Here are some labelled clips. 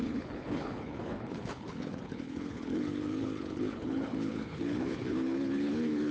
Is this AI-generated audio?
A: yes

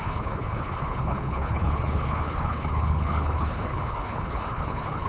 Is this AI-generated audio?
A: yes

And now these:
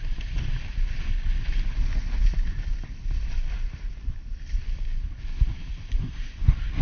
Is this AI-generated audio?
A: no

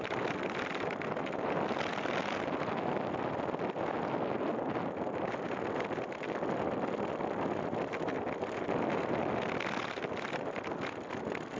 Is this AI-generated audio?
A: no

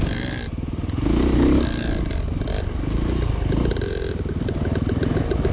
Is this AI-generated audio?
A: no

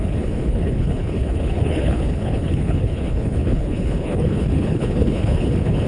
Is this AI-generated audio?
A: yes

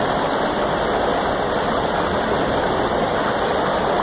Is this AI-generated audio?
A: no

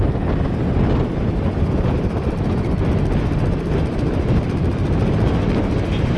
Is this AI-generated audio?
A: no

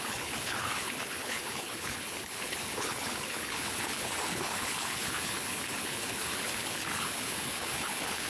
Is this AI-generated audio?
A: yes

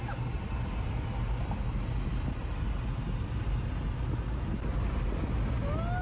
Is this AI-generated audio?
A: no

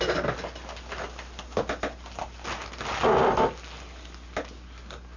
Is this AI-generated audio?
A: no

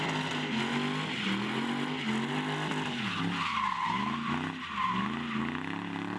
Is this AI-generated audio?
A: no